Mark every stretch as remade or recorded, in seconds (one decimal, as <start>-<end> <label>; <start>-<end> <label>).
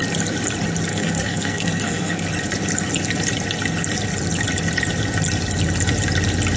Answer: 0.0-0.9 recorded; 0.9-2.2 remade; 2.2-6.6 recorded